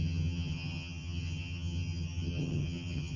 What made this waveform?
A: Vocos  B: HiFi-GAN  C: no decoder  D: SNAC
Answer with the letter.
B